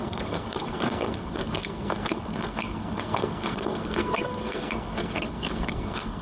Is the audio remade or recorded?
remade